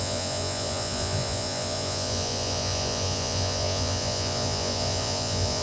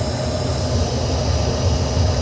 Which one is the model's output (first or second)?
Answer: first